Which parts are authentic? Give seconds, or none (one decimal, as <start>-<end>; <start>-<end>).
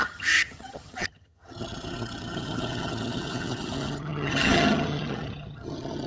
none